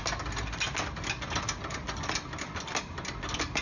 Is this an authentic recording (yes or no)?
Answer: yes